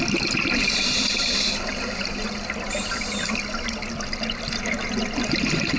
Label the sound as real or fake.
real